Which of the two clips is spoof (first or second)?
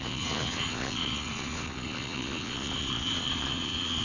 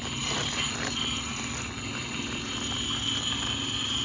first